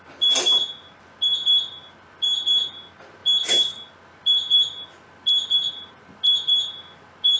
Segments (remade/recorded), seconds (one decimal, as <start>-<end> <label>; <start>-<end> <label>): 0.0-7.4 recorded